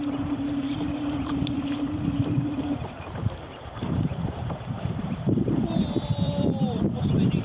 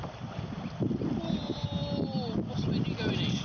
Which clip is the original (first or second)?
second